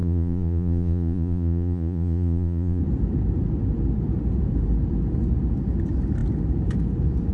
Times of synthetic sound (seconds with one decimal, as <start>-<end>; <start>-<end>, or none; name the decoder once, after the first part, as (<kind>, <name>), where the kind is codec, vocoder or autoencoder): 0.0-2.8 (vocoder, Vocos)